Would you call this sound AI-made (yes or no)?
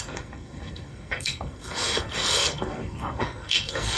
yes